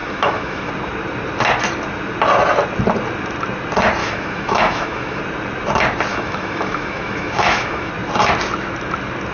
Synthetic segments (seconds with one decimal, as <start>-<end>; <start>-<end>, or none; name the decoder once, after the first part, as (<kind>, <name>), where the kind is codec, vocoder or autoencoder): 0.0-0.7 (autoencoder, DAC-VAE); 4.0-5.2; 6.1-7.9

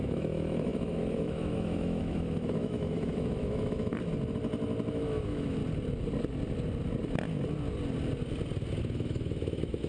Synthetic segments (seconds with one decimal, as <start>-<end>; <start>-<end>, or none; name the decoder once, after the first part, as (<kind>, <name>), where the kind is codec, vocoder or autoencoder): 0.0-3.9 (autoencoder, DAC-VAE); 4.9-5.6; 8.8-9.9

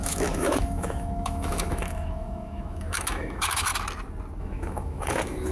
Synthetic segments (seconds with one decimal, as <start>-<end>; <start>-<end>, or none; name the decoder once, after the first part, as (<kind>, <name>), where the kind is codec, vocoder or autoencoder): 0.0-3.7 (autoencoder, DAC-VAE); 4.4-5.5

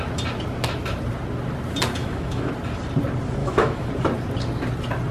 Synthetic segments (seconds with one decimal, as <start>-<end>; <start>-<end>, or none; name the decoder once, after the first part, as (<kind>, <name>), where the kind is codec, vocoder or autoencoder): 2.0-2.5 (autoencoder, DAC-VAE); 3.4-3.9